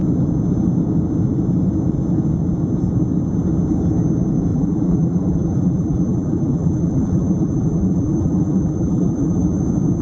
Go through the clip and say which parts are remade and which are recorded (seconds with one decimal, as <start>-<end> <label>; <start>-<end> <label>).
0.0-4.5 recorded; 4.5-9.6 remade; 9.6-10.0 recorded